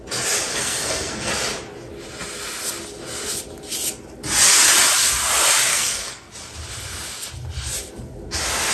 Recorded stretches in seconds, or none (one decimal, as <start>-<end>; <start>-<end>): 0.0-0.5; 1.3-5.7; 6.3-8.7